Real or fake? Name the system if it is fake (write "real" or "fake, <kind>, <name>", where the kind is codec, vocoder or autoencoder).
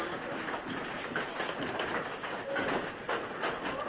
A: real